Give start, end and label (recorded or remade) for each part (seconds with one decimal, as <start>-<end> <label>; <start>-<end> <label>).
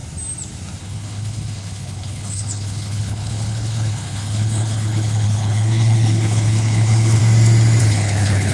0.0-0.8 recorded; 0.8-7.2 remade; 7.2-7.8 recorded; 7.8-8.5 remade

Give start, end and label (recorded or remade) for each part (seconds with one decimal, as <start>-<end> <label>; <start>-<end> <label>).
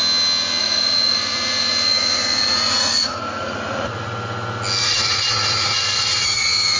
0.0-0.6 recorded; 0.6-4.1 remade; 4.1-4.8 recorded; 4.8-6.8 remade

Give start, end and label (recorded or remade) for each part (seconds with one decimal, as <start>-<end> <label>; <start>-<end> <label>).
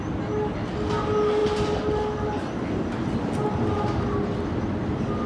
0.0-5.3 recorded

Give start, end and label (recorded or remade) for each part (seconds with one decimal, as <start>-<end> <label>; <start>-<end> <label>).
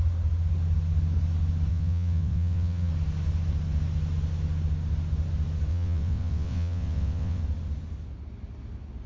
0.0-1.7 recorded; 1.7-2.9 remade; 2.9-5.7 recorded; 5.7-7.4 remade; 7.4-9.1 recorded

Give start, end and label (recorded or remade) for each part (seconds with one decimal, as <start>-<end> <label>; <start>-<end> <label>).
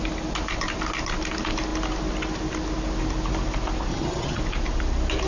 0.0-3.9 recorded; 3.9-4.4 remade; 4.4-5.3 recorded